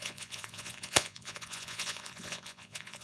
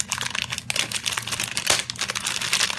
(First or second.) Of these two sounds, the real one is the second